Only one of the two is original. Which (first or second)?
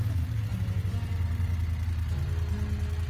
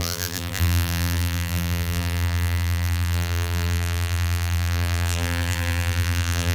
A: first